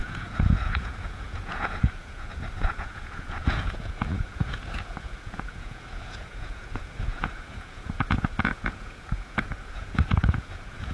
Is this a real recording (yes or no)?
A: no